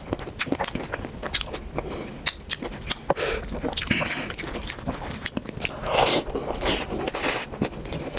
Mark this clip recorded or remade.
recorded